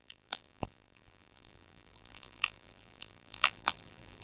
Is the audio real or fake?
fake